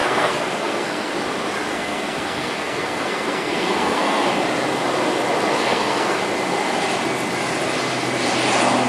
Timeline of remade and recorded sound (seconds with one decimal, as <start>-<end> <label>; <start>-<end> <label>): 0.0-1.1 remade; 1.1-1.7 recorded; 1.7-4.3 remade; 4.3-5.5 recorded; 5.5-6.2 remade; 6.2-8.9 recorded